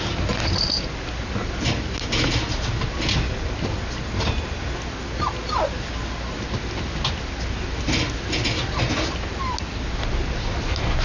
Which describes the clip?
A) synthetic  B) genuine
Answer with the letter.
B